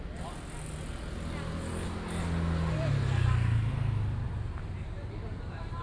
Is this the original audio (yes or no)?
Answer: yes